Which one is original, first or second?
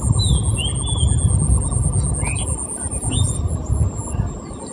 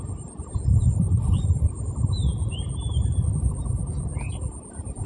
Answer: first